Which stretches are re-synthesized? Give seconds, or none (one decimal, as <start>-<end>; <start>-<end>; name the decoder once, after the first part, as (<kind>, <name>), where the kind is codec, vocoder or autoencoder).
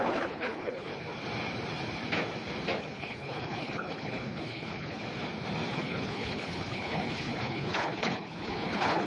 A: 0.0-0.9 (codec, HILCodec); 2.8-5.0; 5.7-9.1